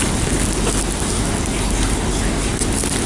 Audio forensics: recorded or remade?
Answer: recorded